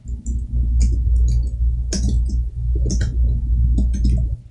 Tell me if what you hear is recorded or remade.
recorded